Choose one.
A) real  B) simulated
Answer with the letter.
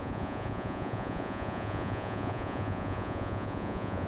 B